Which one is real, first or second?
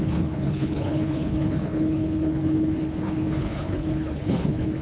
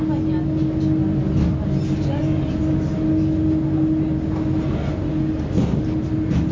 second